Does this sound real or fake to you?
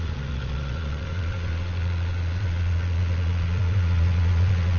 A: fake